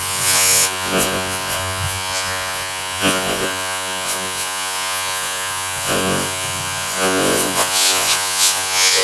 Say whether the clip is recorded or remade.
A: remade